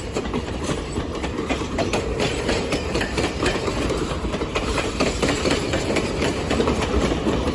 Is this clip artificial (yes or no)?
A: yes